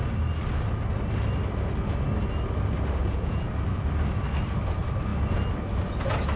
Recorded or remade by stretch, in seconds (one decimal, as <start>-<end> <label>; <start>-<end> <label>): 0.0-3.0 recorded; 3.0-3.5 remade; 3.5-6.4 recorded